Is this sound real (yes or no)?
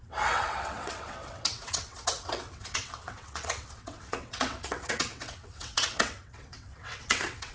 no